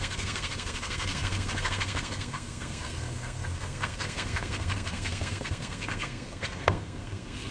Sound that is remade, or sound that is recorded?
remade